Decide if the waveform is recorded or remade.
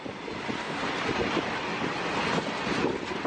recorded